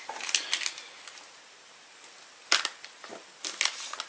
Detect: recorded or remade recorded